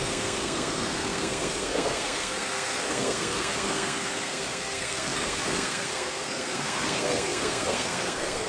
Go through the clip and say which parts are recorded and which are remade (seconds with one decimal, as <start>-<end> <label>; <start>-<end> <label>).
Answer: 0.0-8.5 remade